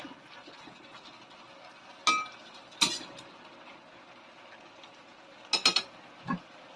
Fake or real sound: real